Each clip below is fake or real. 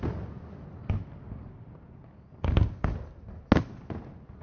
real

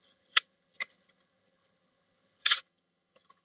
fake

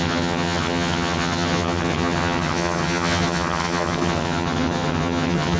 fake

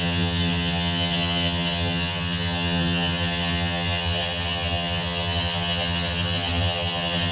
fake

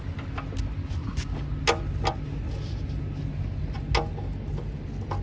real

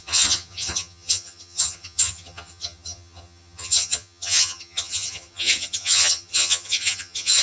fake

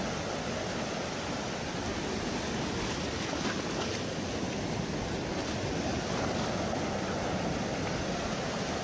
real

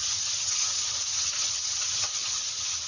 fake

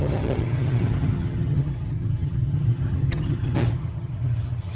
fake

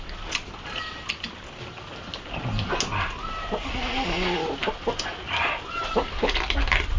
real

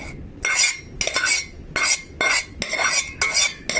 real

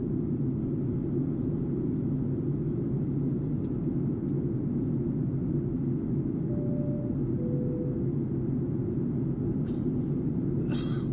real